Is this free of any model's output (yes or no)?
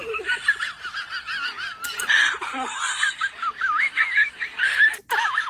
yes